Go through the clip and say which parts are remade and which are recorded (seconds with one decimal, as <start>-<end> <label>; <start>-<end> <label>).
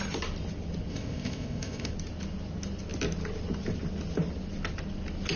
0.0-0.9 recorded; 0.9-1.9 remade; 1.9-5.4 recorded